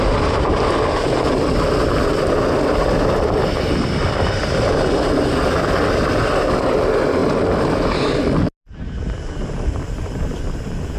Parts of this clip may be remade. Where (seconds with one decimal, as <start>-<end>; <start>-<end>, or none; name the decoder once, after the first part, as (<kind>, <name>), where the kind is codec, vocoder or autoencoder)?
none